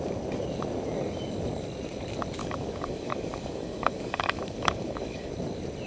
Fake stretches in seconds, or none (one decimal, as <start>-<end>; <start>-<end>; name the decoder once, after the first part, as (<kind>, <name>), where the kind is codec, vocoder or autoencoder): 2.4-5.3 (codec, DAC)

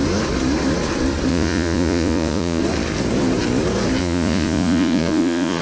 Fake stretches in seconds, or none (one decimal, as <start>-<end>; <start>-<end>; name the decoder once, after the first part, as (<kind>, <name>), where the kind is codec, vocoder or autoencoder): 1.3-2.6 (vocoder, Vocos); 4.0-5.6

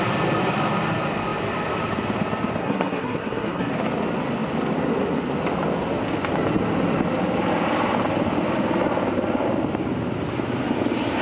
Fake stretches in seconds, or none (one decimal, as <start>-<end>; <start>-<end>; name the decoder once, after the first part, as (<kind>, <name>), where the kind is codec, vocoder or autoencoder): 2.6-3.7 (codec, SNAC)

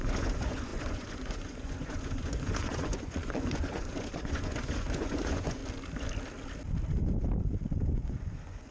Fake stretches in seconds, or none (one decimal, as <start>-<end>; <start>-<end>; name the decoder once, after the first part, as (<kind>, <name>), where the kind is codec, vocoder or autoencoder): 0.0-5.6 (vocoder, Vocos); 7.9-8.7